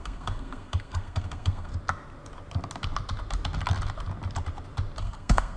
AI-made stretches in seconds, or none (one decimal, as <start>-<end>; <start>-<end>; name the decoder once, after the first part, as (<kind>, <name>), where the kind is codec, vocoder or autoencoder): 0.0-1.7 (codec, SNAC); 5.0-5.6